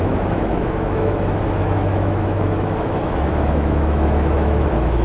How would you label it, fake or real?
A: fake